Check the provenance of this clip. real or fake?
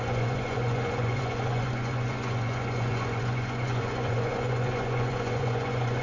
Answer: fake